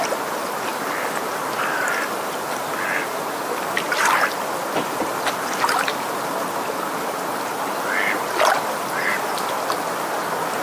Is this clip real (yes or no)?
yes